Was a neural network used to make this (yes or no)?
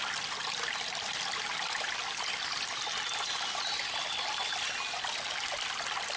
no